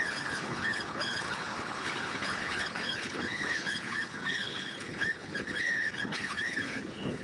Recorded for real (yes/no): no